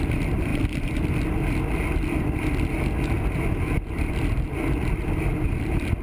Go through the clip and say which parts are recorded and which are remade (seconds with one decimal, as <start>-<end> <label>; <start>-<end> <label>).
0.0-6.0 recorded